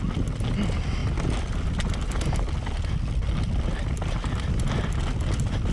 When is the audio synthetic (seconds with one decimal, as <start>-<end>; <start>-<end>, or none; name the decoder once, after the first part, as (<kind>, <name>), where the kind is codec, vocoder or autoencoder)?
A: none